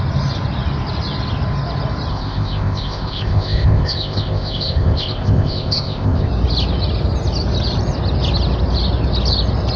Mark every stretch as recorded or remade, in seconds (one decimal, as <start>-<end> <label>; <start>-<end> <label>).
0.0-2.1 recorded; 2.1-6.3 remade; 6.3-9.8 recorded